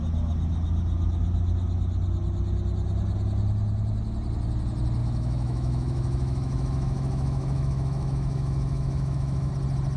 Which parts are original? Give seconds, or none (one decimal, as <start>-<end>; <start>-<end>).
0.0-5.0; 9.5-10.0